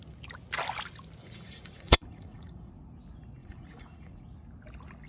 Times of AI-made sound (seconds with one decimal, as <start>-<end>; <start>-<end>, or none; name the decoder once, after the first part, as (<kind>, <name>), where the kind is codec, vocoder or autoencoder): 1.2-2.7 (vocoder, Vocos); 3.4-4.2